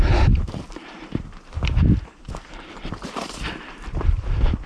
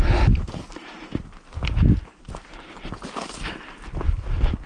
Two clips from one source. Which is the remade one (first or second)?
first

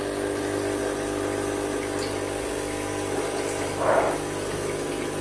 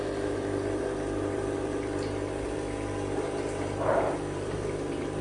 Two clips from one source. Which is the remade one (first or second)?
second